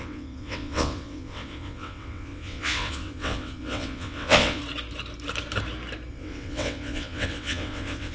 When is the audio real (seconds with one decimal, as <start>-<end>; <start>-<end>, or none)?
4.6-6.1